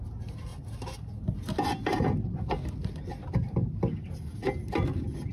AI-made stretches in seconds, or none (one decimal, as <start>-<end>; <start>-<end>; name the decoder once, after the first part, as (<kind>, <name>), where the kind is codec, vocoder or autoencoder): 3.1-3.9 (vocoder, BigVGAN v2)